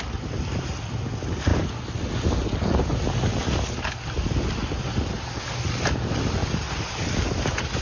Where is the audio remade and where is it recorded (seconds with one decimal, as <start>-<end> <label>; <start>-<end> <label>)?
0.0-7.8 recorded